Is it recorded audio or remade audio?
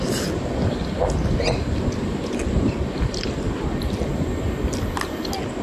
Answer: recorded